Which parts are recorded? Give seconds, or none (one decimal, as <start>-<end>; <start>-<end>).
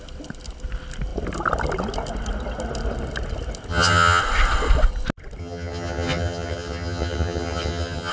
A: 0.0-3.7; 4.2-5.4